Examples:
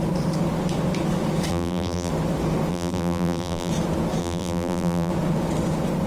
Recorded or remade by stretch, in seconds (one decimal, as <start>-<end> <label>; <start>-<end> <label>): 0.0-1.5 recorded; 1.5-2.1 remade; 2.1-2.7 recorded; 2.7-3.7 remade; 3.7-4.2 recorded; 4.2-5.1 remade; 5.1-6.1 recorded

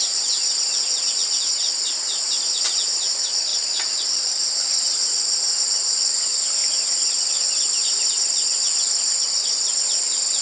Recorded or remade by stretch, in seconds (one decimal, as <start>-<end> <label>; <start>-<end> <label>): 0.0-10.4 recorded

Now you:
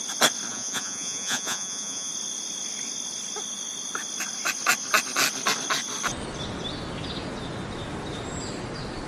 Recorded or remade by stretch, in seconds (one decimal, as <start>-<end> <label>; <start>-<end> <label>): 0.0-0.5 recorded; 0.5-2.1 remade; 2.1-9.1 recorded

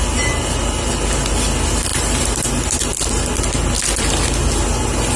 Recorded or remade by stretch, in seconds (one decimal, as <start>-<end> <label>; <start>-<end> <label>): 0.0-5.2 recorded

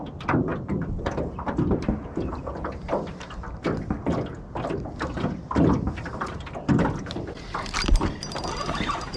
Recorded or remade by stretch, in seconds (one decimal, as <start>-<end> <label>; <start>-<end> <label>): 0.0-9.2 recorded